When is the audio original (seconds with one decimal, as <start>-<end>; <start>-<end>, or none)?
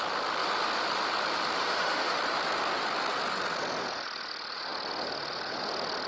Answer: 0.0-1.6; 2.2-6.1